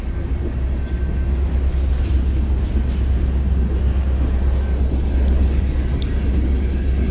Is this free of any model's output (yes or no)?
yes